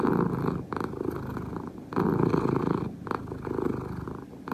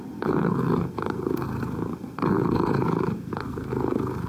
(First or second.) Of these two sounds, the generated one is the second